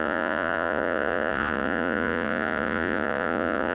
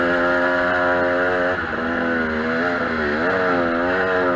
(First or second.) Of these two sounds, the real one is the second